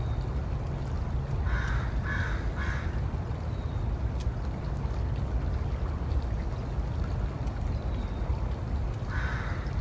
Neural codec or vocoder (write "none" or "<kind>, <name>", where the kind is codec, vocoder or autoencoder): none